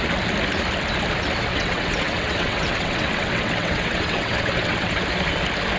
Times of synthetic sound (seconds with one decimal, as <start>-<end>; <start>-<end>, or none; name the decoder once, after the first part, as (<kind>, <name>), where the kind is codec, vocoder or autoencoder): 1.5-5.0 (vocoder, WaveNeXt)